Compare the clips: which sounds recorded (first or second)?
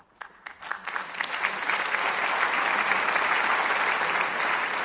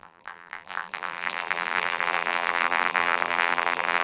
first